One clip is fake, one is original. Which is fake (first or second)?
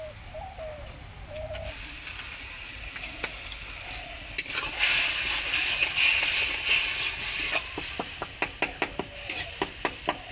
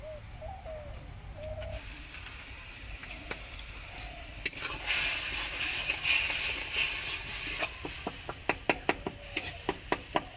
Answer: first